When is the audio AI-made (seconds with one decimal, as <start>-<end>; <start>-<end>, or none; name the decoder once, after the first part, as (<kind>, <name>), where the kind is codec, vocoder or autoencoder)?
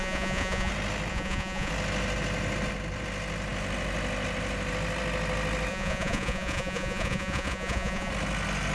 0.0-0.7 (vocoder, Vocos); 1.1-1.7; 5.7-8.1